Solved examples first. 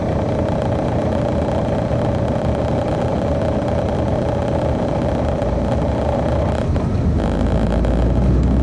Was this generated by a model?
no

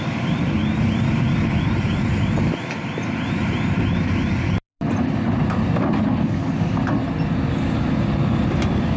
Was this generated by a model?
yes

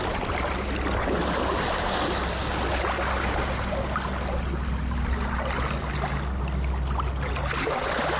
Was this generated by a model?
no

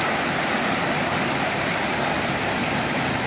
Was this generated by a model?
no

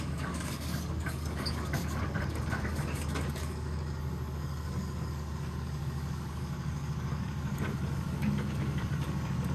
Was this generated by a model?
yes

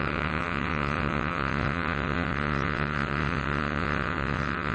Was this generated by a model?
yes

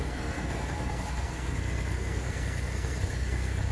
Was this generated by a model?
yes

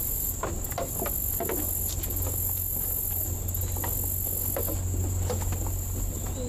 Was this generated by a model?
no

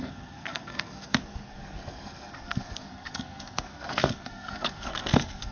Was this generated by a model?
yes